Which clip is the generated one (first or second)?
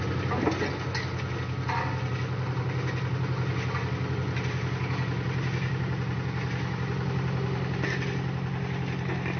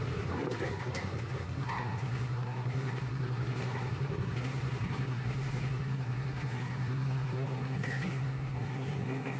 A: second